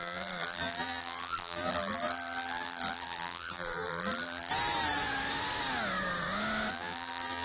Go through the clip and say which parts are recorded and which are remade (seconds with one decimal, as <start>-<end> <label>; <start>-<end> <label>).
0.0-4.5 remade; 4.5-6.7 recorded; 6.7-7.4 remade